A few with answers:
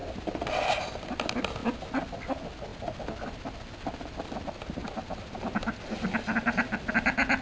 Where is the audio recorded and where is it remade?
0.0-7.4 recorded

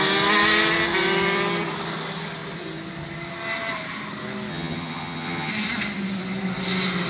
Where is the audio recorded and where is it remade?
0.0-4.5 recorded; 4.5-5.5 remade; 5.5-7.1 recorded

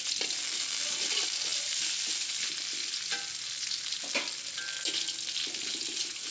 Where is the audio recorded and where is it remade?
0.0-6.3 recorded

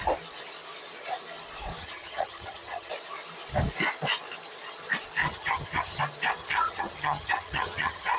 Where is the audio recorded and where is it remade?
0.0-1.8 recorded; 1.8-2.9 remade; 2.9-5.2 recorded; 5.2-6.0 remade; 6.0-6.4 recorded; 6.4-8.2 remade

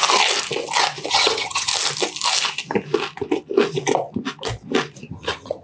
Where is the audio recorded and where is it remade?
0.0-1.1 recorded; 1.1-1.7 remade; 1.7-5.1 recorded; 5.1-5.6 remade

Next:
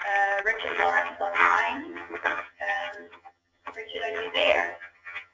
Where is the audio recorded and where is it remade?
0.0-0.6 recorded; 0.6-5.3 remade

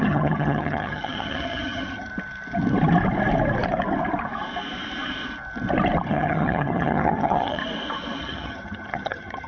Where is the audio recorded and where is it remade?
0.0-2.1 remade; 2.1-6.1 recorded; 6.1-7.6 remade; 7.6-8.2 recorded; 8.2-9.5 remade